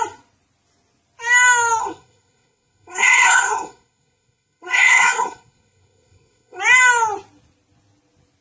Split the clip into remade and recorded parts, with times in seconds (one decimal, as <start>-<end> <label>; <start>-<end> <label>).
0.0-1.8 recorded; 1.8-6.6 remade; 6.6-8.4 recorded